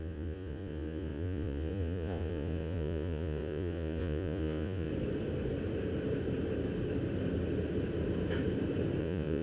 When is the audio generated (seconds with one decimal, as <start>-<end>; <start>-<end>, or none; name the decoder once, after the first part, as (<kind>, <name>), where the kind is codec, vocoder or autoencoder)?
0.0-4.9 (vocoder, Vocos); 9.0-9.4